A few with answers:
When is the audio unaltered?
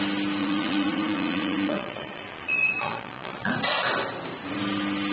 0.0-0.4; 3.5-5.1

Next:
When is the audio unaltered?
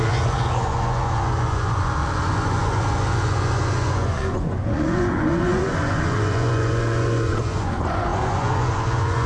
none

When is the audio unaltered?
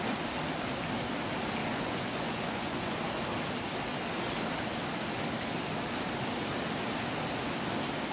0.0-1.6; 3.0-8.1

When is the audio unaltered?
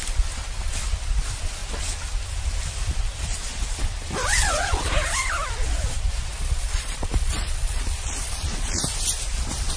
0.0-4.4; 4.9-6.3; 8.8-9.8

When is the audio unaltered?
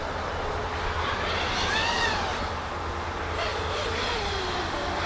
0.0-5.1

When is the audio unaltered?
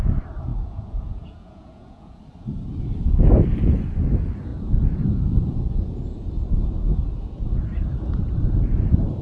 0.0-0.5; 2.2-4.5; 7.6-9.2